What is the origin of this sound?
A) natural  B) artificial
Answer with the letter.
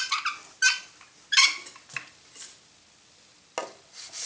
A